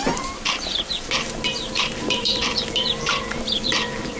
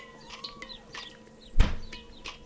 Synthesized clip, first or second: first